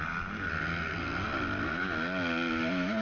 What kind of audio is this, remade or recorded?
recorded